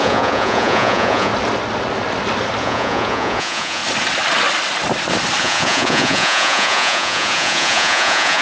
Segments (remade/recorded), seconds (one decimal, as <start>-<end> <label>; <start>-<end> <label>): 0.0-1.3 remade; 1.3-2.6 recorded; 2.6-3.8 remade; 3.8-5.4 recorded; 5.4-8.4 remade